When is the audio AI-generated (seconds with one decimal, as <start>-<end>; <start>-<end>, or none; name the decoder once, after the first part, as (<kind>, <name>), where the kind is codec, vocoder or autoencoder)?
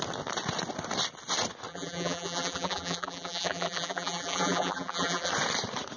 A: 1.7-5.3 (vocoder, BigVGAN v2)